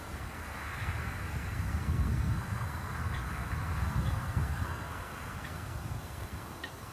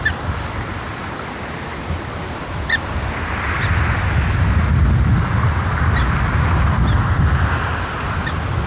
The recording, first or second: second